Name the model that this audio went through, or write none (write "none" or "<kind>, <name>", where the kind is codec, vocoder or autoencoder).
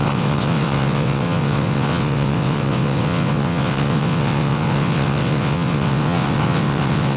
vocoder, WaveNeXt